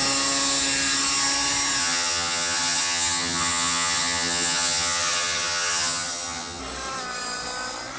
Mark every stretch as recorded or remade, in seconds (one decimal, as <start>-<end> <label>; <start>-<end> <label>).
0.0-1.8 recorded; 1.8-6.6 remade; 6.6-8.0 recorded